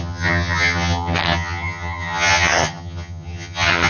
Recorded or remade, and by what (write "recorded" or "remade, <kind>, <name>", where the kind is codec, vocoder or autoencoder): remade, vocoder, HiFi-GAN